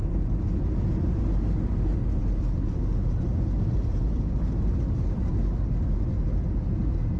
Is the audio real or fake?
real